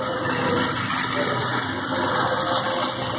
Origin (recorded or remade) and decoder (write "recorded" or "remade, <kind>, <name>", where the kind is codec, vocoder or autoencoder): recorded